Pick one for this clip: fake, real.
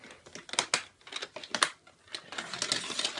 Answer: real